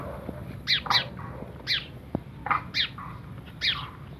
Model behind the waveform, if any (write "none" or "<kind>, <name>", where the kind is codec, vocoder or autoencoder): none